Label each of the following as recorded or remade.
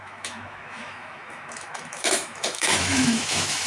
remade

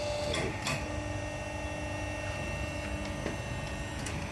recorded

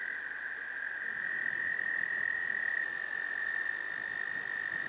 recorded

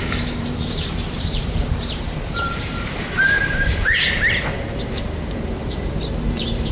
remade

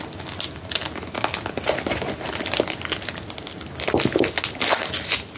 recorded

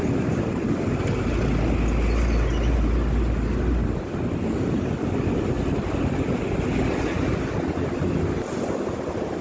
recorded